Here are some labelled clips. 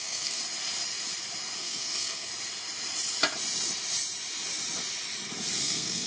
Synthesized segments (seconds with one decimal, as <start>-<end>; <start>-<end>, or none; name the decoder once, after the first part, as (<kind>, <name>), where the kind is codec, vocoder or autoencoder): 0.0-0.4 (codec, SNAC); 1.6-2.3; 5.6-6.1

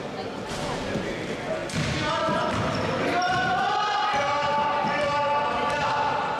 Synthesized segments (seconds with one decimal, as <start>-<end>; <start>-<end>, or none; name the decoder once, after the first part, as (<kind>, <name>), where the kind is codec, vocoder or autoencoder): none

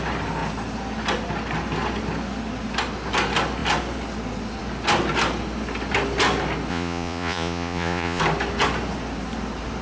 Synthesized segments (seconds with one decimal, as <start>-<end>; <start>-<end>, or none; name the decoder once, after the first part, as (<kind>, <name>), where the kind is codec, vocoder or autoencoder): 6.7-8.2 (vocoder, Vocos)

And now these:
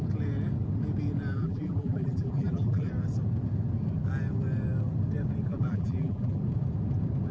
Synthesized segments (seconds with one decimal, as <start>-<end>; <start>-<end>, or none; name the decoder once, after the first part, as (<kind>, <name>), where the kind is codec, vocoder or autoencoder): 1.3-2.9 (vocoder, BigVGAN v2); 5.5-6.4

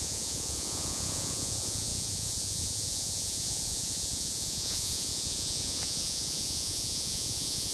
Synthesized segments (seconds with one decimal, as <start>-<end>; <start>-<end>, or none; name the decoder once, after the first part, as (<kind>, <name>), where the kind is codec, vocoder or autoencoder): 0.0-7.7 (vocoder, Vocos)